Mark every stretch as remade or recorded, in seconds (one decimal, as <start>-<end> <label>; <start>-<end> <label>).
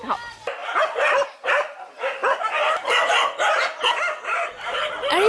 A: 0.0-5.3 recorded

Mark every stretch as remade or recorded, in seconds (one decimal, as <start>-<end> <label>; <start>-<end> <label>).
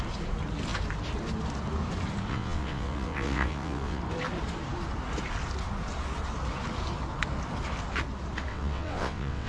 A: 0.0-2.3 recorded; 2.3-4.0 remade; 4.0-8.5 recorded; 8.5-9.5 remade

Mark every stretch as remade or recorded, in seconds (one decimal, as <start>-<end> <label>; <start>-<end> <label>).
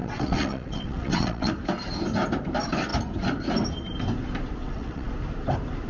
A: 0.0-1.5 remade; 1.5-4.6 recorded; 4.6-5.1 remade; 5.1-5.9 recorded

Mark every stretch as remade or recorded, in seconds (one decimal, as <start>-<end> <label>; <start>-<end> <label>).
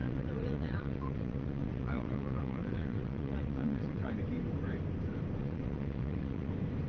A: 0.0-4.1 remade; 4.1-5.4 recorded; 5.4-6.5 remade; 6.5-6.9 recorded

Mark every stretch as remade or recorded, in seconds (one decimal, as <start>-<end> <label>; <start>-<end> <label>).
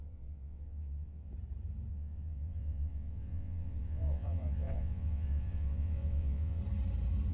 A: 0.0-1.3 remade; 1.3-1.9 recorded; 1.9-6.6 remade; 6.6-7.3 recorded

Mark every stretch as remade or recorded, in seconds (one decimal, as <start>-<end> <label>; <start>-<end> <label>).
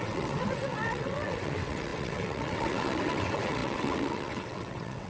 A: 0.0-5.1 remade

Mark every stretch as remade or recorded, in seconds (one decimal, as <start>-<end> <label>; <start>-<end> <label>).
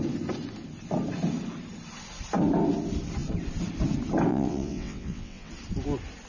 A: 0.0-4.3 recorded; 4.3-5.5 remade; 5.5-6.3 recorded